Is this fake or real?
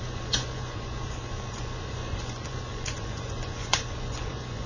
fake